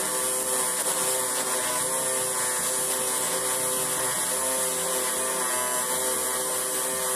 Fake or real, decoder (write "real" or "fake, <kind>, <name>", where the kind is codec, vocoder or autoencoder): real